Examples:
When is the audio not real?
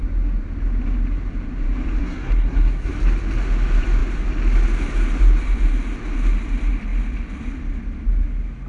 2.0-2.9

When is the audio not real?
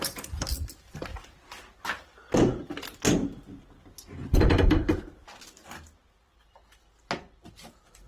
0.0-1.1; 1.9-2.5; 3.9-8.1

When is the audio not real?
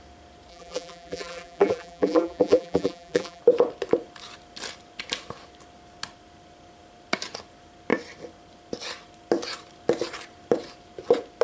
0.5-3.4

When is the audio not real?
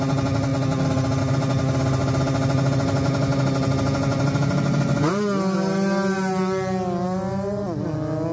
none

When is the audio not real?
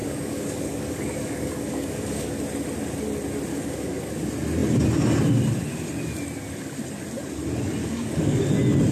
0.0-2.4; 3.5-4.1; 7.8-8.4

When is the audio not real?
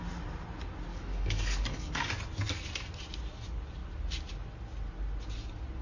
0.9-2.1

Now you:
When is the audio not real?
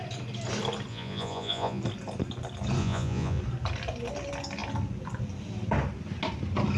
0.9-1.8; 2.8-3.4